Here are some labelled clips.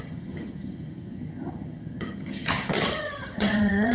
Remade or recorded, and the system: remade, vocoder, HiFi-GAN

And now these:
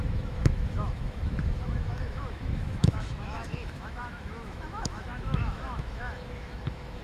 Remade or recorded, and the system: remade, autoencoder, DAC-VAE